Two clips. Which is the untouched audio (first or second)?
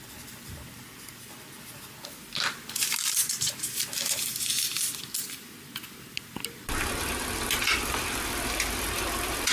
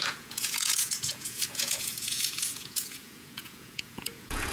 first